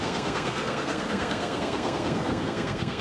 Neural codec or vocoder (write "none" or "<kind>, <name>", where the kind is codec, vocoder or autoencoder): codec, SNAC